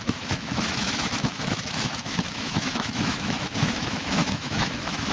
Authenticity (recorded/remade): remade